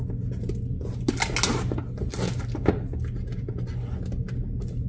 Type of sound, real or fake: real